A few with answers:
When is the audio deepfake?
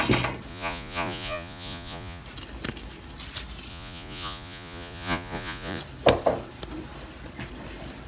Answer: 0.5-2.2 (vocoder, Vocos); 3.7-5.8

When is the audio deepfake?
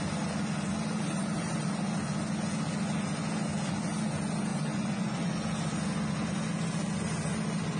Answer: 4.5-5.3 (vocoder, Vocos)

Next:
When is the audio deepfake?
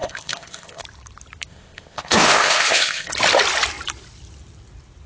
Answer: 0.0-0.8 (codec, ZipCodec); 1.5-3.1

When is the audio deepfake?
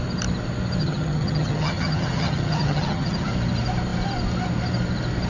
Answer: 0.8-3.3 (vocoder, HiFi-GAN)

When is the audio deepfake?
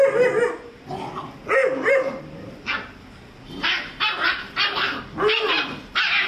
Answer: 1.6-2.2 (vocoder, BigVGAN v2)